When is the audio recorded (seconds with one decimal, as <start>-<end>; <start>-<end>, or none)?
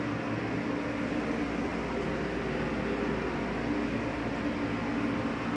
0.0-5.6